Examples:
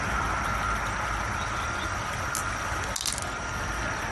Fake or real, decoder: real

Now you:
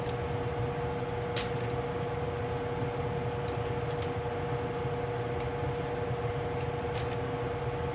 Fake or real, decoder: real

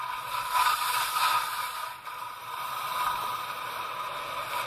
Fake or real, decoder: real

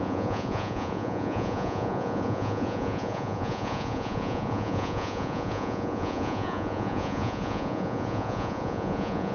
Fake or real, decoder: fake, vocoder, Vocos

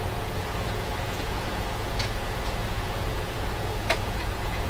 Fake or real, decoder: fake, vocoder, Vocos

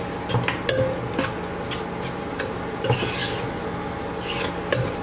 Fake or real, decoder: real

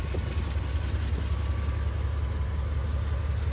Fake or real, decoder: real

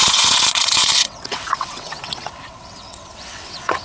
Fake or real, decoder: fake, vocoder, WaveNeXt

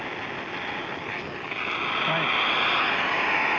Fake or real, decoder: real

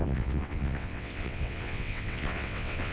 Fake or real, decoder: fake, vocoder, WaveNeXt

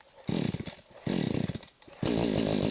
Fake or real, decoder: real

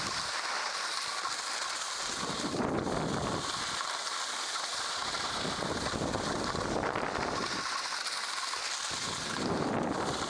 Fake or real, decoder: real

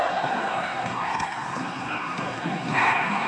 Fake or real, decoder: fake, codec, SNAC